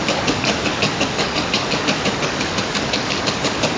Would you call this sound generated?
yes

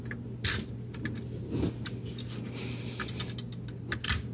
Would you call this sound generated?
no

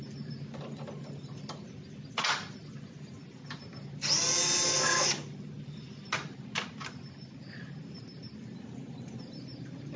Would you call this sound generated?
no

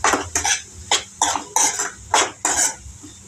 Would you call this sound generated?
no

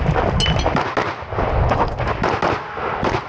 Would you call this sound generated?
no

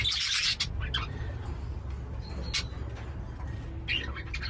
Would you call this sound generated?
no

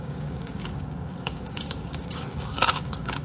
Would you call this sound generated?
yes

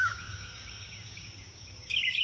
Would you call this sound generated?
yes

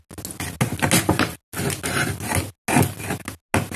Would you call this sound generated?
no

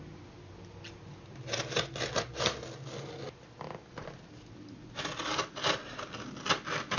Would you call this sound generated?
no